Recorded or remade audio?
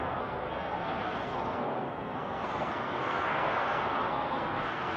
remade